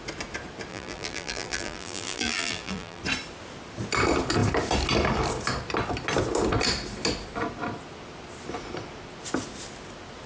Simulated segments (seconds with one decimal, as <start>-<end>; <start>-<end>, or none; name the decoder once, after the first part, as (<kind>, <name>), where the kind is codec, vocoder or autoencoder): 0.7-3.0 (vocoder, BigVGAN v2)

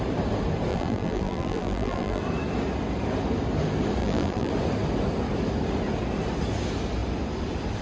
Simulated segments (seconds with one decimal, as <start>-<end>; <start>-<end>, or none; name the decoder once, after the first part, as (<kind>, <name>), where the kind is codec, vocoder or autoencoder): 0.7-2.2 (vocoder, BigVGAN v2); 4.0-4.5

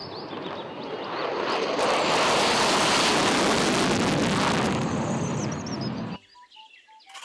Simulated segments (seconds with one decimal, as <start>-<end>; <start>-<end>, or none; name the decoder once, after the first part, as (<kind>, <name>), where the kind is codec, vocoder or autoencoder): none